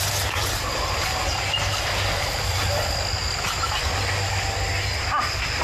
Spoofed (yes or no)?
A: no